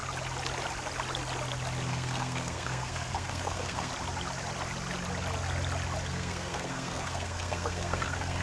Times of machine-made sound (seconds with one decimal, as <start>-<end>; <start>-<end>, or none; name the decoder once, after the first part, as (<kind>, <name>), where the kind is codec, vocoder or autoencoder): 1.9-3.9 (codec, SNAC); 6.1-8.4